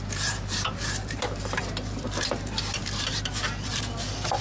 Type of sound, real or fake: fake